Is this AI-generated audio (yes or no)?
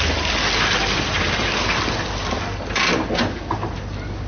no